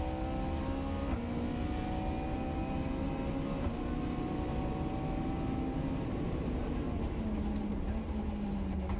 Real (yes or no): yes